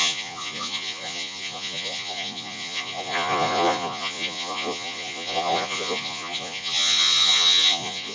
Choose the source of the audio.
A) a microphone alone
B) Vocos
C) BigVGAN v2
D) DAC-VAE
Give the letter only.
B